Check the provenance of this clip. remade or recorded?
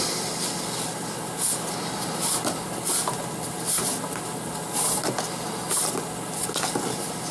recorded